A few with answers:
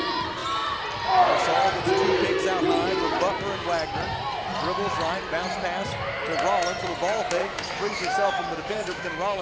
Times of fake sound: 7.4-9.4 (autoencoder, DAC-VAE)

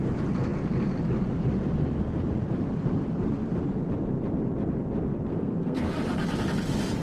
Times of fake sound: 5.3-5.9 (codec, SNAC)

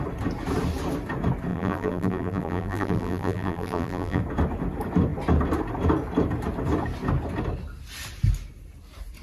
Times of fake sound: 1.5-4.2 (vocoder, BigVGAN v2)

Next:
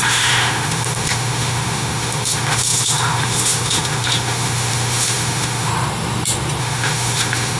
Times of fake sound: 0.0-5.7 (autoencoder, DAC-VAE); 6.6-7.6

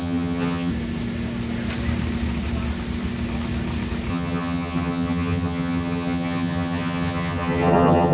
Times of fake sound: 0.0-0.7 (vocoder, HiFi-GAN); 4.1-8.1